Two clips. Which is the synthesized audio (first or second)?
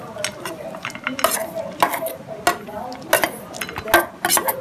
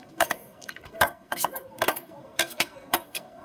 second